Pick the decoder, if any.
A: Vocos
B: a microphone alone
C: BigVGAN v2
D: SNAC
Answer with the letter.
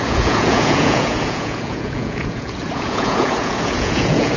A